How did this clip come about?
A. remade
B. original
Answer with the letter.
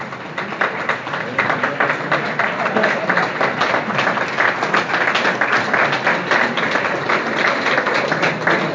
B